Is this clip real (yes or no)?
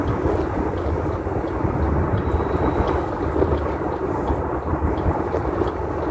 yes